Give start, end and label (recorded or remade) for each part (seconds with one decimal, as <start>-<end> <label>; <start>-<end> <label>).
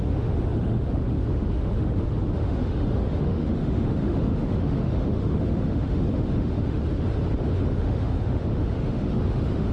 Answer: 0.0-6.8 remade; 6.8-7.4 recorded; 7.4-9.7 remade